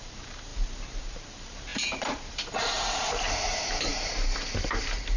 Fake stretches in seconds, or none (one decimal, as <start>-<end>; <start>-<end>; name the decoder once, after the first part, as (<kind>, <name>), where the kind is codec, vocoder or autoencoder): 0.0-0.5 (vocoder, BigVGAN v2); 1.0-5.2